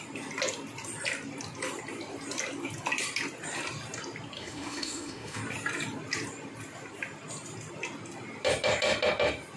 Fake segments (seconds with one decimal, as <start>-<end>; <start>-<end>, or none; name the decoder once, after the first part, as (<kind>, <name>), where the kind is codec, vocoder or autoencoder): 4.4-5.4 (autoencoder, DAC-VAE)